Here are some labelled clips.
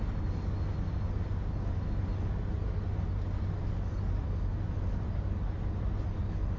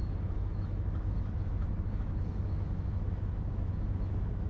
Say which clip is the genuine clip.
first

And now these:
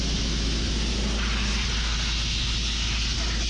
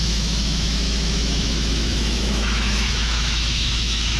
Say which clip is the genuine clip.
first